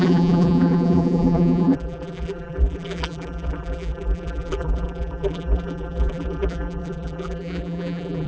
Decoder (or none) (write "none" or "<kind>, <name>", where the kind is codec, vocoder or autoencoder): vocoder, BigVGAN v2